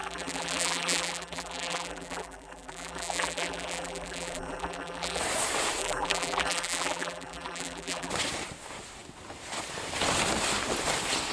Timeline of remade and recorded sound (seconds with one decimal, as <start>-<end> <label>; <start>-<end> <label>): 0.0-5.2 remade; 5.2-5.8 recorded; 5.8-8.1 remade; 8.1-11.3 recorded